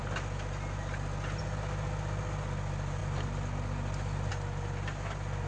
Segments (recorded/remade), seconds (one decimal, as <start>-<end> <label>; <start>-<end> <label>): 0.0-5.5 recorded